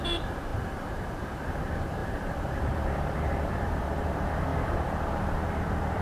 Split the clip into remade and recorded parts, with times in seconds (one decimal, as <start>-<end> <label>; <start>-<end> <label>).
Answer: 0.0-0.5 remade; 0.5-1.2 recorded; 1.2-6.0 remade